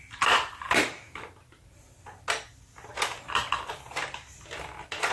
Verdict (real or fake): real